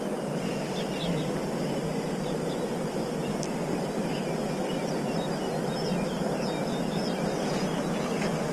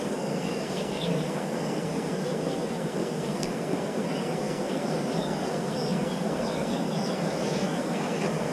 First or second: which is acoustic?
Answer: first